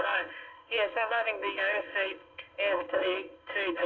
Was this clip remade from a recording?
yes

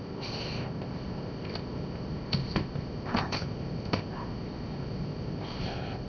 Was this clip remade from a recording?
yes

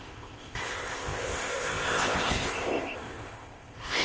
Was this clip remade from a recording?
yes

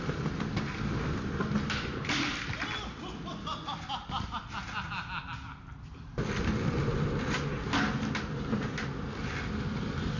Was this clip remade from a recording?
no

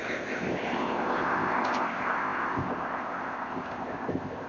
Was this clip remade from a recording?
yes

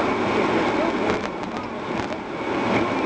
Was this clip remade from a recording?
no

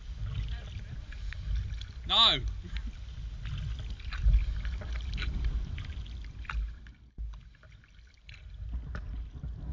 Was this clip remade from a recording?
no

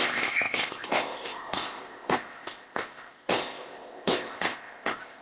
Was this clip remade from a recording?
yes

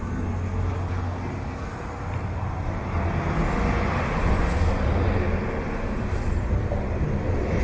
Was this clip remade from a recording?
no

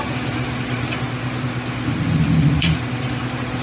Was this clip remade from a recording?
no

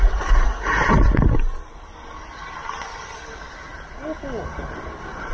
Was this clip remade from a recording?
no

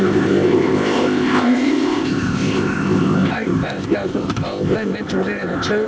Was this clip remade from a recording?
yes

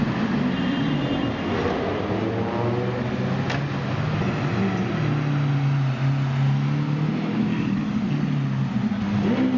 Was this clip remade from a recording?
no